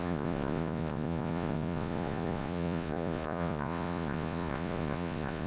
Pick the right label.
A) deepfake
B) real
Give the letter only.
A